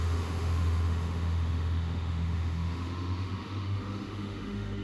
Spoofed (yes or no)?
yes